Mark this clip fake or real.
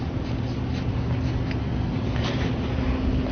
real